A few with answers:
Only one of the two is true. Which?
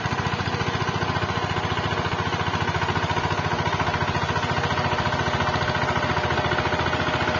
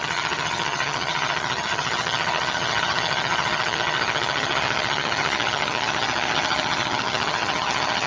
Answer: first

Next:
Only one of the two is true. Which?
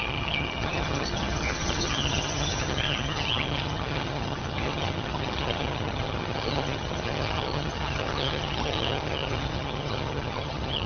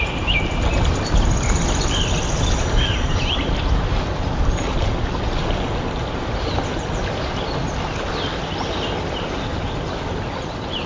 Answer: second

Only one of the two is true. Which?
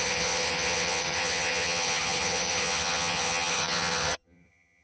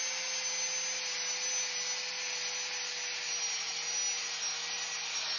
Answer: second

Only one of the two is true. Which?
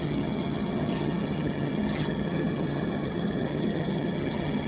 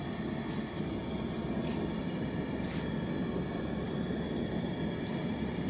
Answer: second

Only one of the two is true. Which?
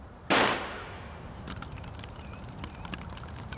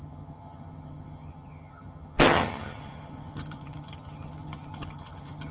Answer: first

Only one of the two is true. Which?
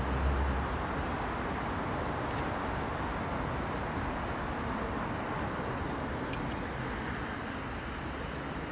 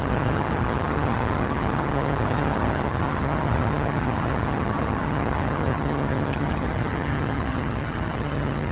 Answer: first